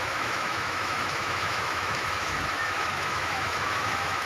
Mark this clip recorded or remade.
remade